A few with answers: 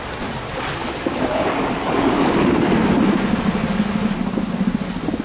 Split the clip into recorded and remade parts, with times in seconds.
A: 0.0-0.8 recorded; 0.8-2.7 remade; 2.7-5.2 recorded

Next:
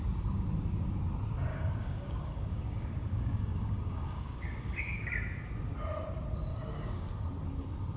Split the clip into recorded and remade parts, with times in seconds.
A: 0.0-1.5 recorded; 1.5-5.1 remade; 5.1-6.5 recorded; 6.5-7.1 remade; 7.1-8.0 recorded

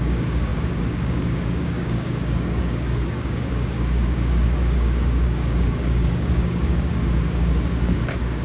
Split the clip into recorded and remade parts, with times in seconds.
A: 0.0-8.4 remade

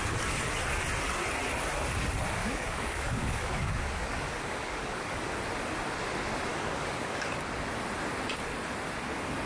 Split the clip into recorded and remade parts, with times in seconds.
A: 0.0-2.4 recorded; 2.4-5.3 remade; 5.3-6.5 recorded; 6.5-7.3 remade; 7.3-9.5 recorded

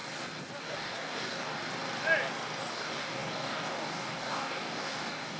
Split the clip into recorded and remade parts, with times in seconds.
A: 0.0-0.6 recorded; 0.6-1.6 remade; 1.6-2.7 recorded; 2.7-5.4 remade

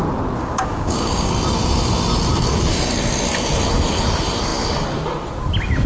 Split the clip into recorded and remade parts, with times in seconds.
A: 0.0-0.4 recorded; 0.4-1.3 remade; 1.3-5.9 recorded